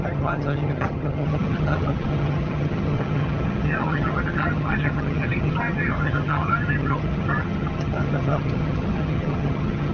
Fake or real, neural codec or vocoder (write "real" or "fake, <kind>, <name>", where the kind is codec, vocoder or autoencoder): fake, vocoder, HiFi-GAN